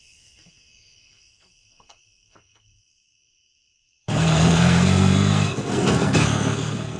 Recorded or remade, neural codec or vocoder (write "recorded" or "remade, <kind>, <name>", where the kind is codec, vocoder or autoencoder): remade, codec, SNAC